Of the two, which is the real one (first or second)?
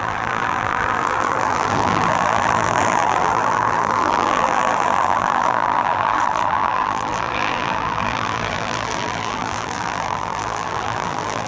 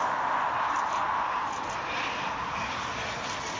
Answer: second